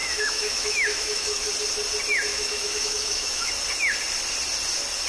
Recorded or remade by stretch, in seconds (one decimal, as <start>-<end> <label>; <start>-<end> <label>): 0.0-1.5 remade; 1.5-2.3 recorded; 2.3-3.5 remade; 3.5-5.1 recorded